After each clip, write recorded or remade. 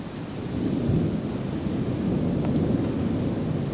recorded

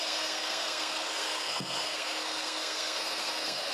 remade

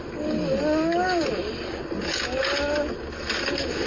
recorded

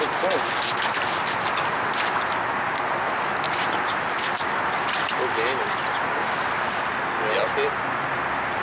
recorded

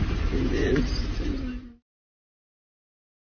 remade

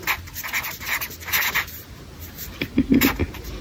recorded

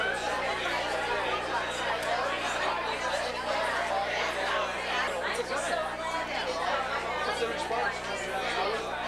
recorded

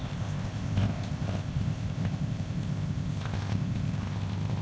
remade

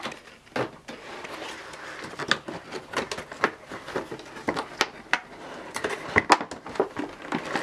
recorded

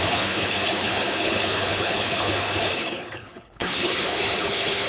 remade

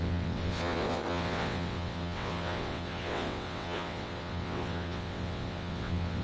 remade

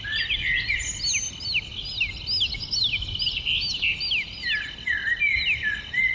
recorded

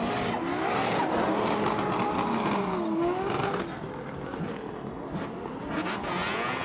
recorded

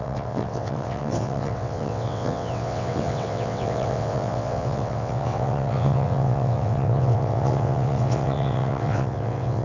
remade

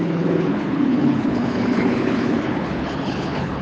remade